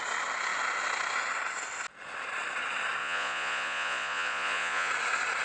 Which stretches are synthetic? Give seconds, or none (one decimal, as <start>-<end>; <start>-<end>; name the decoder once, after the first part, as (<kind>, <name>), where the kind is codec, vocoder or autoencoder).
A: 3.0-4.9 (vocoder, Vocos)